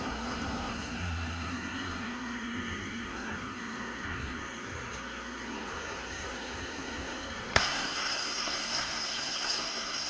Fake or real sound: fake